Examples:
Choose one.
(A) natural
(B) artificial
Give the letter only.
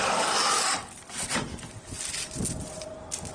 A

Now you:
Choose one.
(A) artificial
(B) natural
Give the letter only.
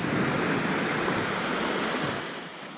B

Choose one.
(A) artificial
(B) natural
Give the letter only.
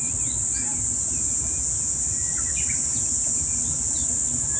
B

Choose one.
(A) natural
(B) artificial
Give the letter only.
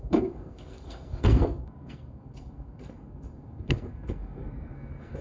B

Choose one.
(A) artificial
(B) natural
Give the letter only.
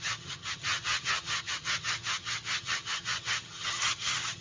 A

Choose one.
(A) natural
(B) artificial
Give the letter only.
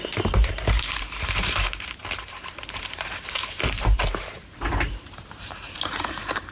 B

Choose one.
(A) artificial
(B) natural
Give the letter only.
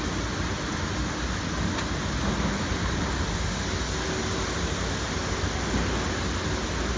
B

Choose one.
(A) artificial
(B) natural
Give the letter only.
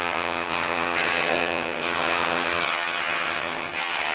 A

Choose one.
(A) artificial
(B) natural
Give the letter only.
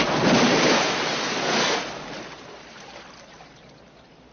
B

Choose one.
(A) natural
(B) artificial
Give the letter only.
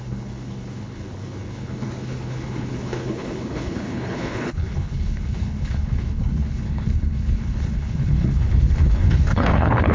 B